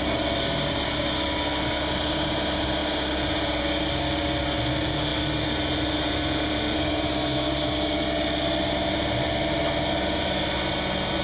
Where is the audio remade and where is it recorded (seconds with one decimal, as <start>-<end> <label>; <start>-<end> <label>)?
0.0-11.2 recorded